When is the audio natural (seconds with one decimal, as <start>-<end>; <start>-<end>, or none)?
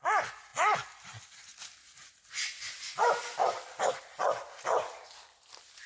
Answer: 0.0-5.9